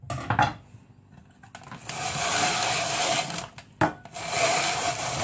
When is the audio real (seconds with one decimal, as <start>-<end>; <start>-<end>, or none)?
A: 0.0-5.2

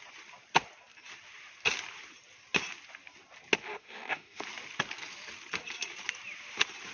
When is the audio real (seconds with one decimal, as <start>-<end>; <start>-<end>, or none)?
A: 0.0-3.7; 4.4-6.9

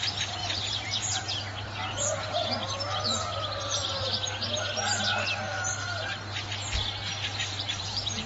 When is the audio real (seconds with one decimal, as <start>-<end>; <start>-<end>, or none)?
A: 0.0-0.4; 1.2-7.4

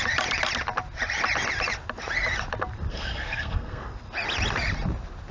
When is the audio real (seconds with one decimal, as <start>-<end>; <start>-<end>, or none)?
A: 0.0-2.9; 3.8-5.3

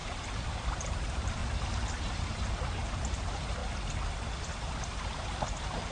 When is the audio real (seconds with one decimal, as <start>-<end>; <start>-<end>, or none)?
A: 1.4-2.0; 3.6-4.8

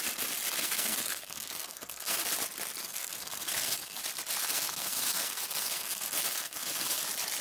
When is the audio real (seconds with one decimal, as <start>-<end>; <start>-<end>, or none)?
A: 0.0-0.6; 2.2-2.8; 4.0-4.4; 7.0-7.4